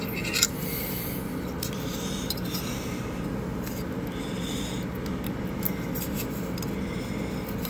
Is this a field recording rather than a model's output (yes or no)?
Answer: yes